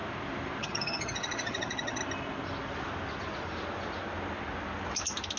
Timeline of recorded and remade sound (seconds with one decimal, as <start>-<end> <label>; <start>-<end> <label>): 0.0-0.6 recorded; 0.6-2.0 remade; 2.0-5.4 recorded